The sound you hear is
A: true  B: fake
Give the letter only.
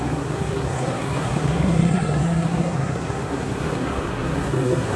B